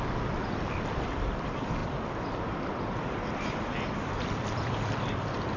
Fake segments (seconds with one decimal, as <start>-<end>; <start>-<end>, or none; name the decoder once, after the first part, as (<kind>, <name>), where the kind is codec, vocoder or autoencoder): 0.0-5.6 (vocoder, BigVGAN v2)